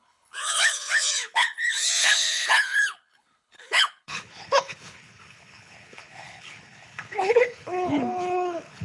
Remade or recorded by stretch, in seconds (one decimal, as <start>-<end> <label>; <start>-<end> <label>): 0.0-8.8 remade